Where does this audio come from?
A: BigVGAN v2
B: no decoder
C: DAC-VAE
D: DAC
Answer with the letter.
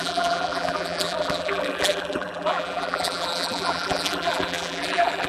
A